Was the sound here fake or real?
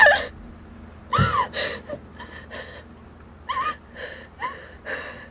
real